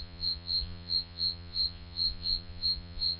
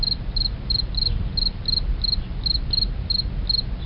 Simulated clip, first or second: first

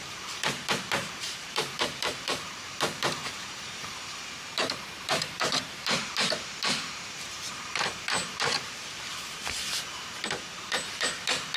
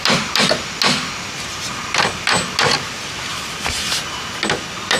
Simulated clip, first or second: first